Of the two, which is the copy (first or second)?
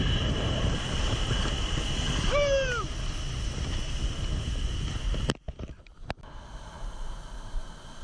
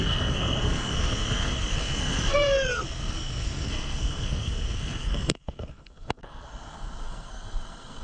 second